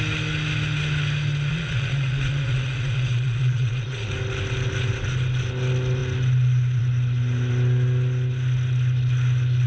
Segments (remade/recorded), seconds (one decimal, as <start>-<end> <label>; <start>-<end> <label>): 0.0-1.5 recorded; 1.5-4.1 remade; 4.1-9.7 recorded